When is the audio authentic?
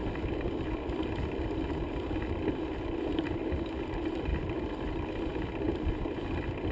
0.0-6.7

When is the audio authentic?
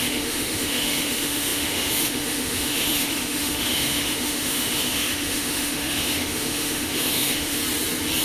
7.6-8.2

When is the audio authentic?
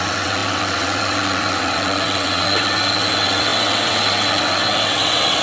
none